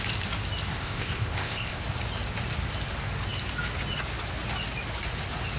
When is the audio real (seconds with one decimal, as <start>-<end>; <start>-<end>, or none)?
0.0-0.7; 1.8-5.6